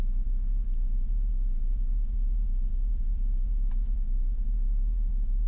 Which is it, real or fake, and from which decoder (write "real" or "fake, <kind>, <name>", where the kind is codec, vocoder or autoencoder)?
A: fake, vocoder, BigVGAN v2